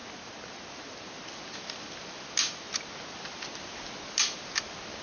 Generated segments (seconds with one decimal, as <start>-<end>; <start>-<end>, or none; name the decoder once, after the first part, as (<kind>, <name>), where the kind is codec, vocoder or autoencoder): none

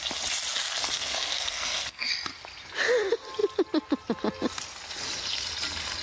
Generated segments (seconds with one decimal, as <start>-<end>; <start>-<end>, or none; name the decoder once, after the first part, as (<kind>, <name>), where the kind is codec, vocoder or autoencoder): 0.5-2.1 (codec, SNAC)

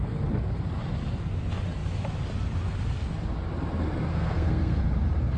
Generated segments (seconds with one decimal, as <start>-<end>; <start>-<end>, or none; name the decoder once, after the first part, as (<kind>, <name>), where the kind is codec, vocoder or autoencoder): 4.1-4.8 (codec, SNAC)